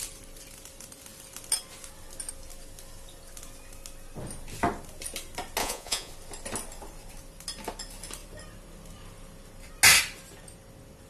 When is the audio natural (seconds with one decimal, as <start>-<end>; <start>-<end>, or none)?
0.0-5.6; 6.1-11.1